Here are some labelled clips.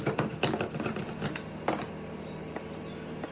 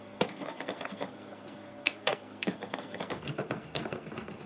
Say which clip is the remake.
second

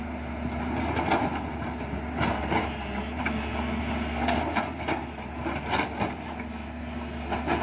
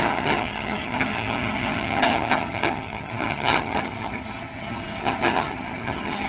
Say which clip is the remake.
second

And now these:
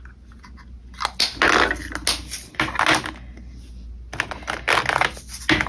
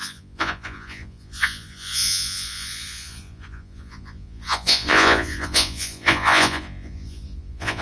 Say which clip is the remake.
second